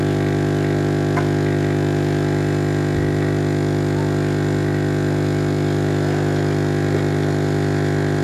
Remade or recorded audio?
recorded